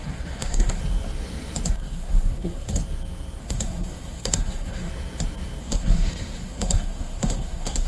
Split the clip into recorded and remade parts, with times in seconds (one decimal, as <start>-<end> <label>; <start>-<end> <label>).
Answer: 0.0-0.8 remade; 0.8-1.7 recorded; 1.7-2.8 remade; 2.8-3.4 recorded; 3.4-4.9 remade; 4.9-5.6 recorded; 5.6-7.9 remade